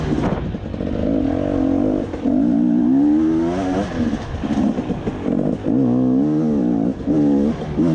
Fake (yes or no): no